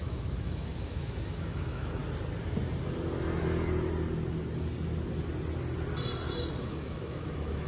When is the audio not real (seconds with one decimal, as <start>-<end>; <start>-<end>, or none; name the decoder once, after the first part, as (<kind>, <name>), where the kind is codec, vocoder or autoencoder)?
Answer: 0.0-2.0 (autoencoder, DAC-VAE); 6.6-7.7